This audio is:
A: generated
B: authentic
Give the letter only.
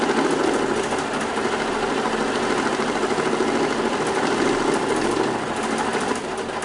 B